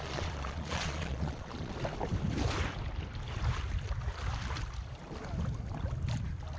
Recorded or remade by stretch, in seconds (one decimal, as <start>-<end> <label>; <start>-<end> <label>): 0.0-1.7 remade; 1.7-6.6 recorded

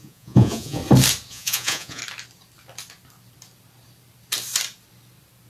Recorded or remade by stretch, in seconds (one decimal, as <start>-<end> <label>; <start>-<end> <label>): 0.0-0.8 remade; 0.8-1.3 recorded; 1.3-2.0 remade; 2.0-5.5 recorded